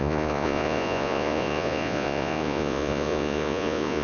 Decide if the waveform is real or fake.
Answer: fake